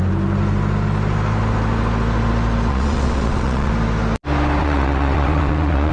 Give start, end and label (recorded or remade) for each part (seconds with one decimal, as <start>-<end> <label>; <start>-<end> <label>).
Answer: 0.0-2.7 recorded; 2.7-3.7 remade; 3.7-4.6 recorded; 4.6-5.9 remade